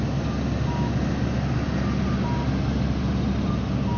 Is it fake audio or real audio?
real